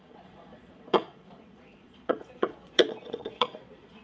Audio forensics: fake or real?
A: fake